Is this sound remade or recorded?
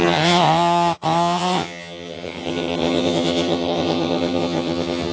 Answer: remade